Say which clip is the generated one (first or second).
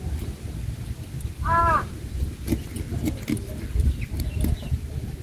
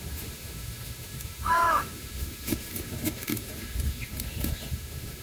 second